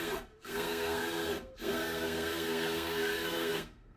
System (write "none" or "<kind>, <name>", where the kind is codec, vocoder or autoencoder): codec, SNAC